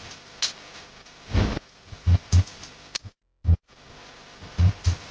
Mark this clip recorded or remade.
recorded